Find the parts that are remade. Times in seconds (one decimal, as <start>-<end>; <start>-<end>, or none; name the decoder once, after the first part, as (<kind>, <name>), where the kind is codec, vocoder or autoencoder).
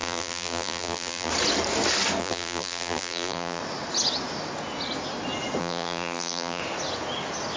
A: 0.0-1.3 (vocoder, BigVGAN v2); 2.2-3.6; 5.6-6.6